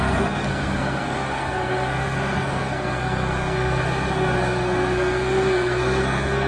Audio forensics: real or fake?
fake